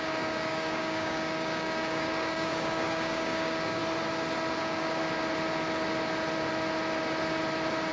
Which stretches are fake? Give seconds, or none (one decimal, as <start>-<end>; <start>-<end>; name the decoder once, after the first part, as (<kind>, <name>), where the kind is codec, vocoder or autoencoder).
0.0-3.8 (codec, DAC); 4.6-5.0